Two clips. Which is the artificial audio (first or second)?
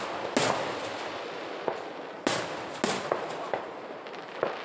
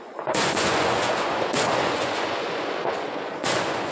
second